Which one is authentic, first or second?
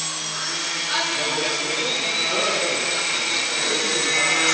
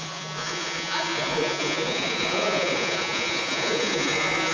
first